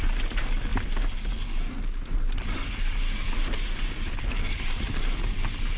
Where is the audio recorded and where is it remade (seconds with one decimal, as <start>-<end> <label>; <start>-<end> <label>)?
0.0-5.8 recorded